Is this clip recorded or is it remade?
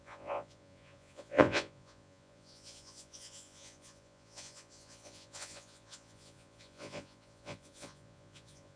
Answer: remade